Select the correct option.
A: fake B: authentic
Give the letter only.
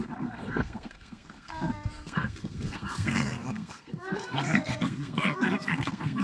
A